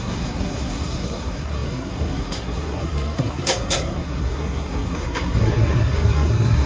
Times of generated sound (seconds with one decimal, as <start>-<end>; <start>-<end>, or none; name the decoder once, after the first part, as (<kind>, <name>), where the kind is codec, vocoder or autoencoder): 0.0-6.7 (codec, SNAC)